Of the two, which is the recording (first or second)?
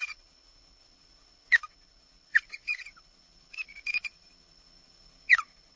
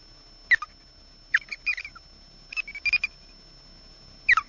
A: second